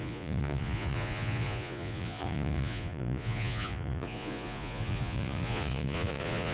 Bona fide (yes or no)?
no